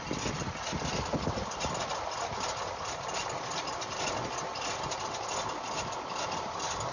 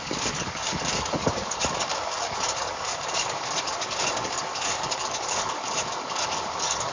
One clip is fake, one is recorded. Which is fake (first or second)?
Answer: second